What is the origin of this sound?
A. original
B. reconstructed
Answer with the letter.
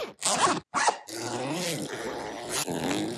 A